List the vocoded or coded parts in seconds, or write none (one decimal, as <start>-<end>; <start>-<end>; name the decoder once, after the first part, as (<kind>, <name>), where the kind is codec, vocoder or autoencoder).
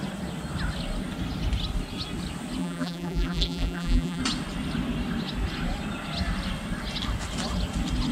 2.6-4.2 (vocoder, BigVGAN v2)